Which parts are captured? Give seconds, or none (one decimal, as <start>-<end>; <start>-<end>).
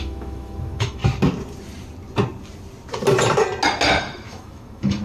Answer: 1.0-4.0